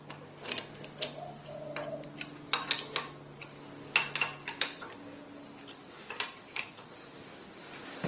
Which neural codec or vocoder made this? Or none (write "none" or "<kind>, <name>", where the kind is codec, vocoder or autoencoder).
none